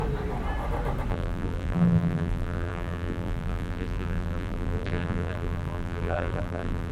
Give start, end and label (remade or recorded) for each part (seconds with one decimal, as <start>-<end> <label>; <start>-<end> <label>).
0.0-1.1 recorded; 1.1-6.9 remade